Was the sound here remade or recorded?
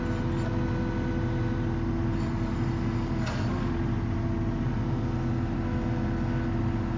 recorded